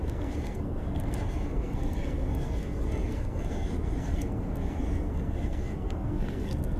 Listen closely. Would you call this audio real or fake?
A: fake